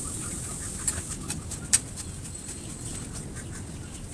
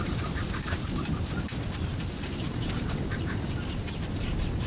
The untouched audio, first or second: first